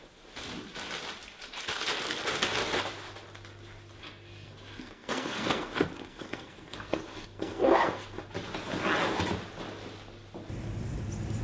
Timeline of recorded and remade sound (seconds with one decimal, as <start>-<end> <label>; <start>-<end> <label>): 0.0-4.0 recorded; 4.0-8.2 remade; 8.2-11.4 recorded